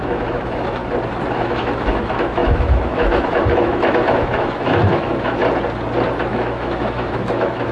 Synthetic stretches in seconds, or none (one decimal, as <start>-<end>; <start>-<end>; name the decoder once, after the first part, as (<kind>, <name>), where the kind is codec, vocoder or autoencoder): 0.0-0.8 (autoencoder, DAC-VAE); 1.3-5.4; 6.3-7.7

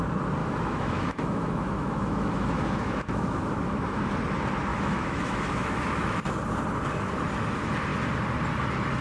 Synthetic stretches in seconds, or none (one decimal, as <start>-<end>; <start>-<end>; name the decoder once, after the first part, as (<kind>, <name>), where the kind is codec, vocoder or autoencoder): 0.4-4.0 (autoencoder, DAC-VAE); 4.7-6.2

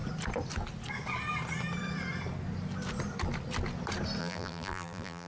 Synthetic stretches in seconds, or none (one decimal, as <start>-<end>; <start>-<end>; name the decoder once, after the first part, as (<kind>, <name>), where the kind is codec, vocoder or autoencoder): 4.2-5.3 (vocoder, BigVGAN v2)

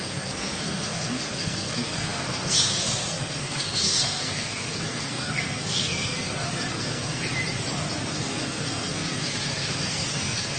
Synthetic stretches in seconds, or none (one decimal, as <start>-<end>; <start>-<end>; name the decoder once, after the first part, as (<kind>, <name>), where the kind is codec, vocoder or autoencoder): 0.0-7.3 (codec, SNAC); 8.1-10.6

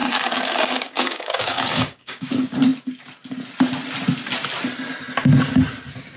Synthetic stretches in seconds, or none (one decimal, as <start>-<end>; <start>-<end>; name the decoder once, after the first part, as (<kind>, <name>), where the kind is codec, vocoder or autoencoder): 0.0-2.3 (codec, DAC)

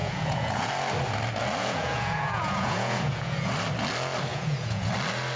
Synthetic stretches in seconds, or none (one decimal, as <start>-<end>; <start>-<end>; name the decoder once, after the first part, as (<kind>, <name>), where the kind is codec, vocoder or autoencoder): 0.0-0.7 (vocoder, Vocos); 1.6-3.5; 4.3-4.9

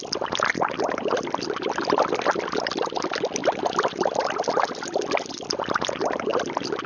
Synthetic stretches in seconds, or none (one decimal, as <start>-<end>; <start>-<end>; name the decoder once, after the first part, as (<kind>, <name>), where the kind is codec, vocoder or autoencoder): none